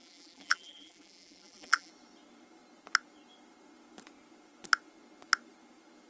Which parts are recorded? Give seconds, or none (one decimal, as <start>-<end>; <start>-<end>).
1.9-6.1